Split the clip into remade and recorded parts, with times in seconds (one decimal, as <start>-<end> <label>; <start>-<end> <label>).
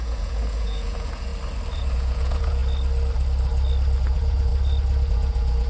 0.0-1.3 remade; 1.3-1.8 recorded; 1.8-2.6 remade; 2.6-4.0 recorded; 4.0-4.5 remade; 4.5-5.1 recorded; 5.1-5.7 remade